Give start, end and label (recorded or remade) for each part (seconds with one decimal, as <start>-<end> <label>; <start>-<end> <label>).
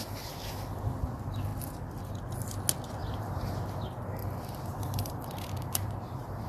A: 0.0-3.0 recorded; 3.0-3.5 remade; 3.5-4.2 recorded; 4.2-6.5 remade